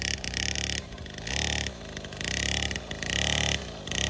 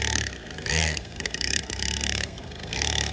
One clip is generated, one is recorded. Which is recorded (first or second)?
first